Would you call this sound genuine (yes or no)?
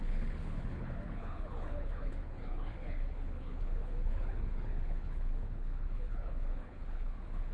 no